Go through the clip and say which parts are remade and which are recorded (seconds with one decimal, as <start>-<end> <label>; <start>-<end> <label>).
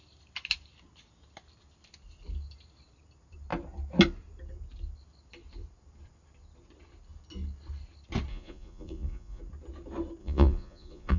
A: 0.0-8.3 recorded; 8.3-9.4 remade; 9.4-10.2 recorded; 10.2-11.2 remade